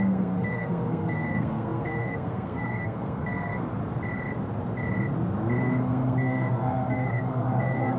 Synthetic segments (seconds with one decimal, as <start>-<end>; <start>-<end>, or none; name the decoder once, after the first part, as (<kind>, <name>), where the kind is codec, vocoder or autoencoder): 0.0-3.8 (codec, SNAC); 5.6-8.0